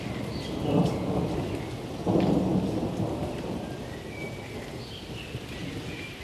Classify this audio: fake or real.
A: real